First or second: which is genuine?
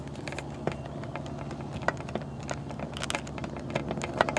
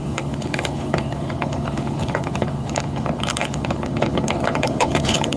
first